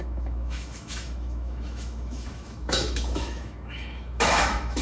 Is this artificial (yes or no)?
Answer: yes